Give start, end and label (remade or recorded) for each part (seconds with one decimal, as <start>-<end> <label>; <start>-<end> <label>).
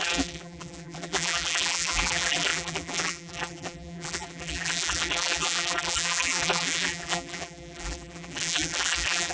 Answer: 0.0-9.3 remade